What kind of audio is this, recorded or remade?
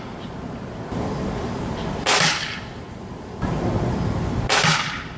recorded